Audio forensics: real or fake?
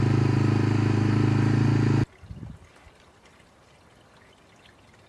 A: real